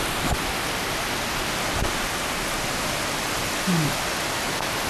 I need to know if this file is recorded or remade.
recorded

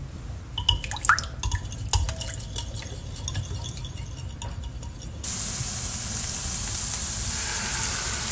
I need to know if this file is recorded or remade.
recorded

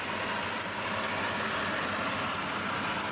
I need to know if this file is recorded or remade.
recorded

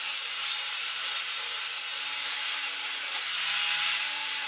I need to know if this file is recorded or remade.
recorded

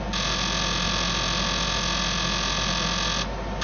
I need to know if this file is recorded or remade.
recorded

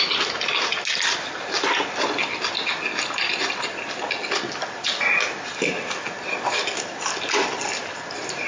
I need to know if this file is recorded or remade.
recorded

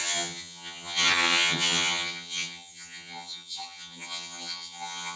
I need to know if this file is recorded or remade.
remade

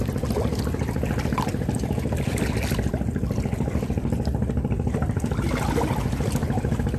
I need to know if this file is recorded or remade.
recorded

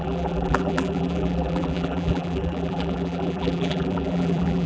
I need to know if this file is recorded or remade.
remade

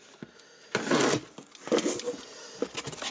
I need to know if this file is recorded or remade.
recorded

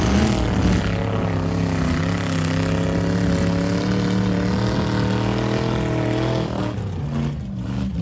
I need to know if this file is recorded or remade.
recorded